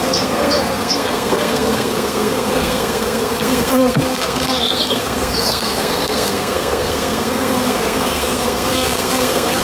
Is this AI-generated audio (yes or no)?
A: yes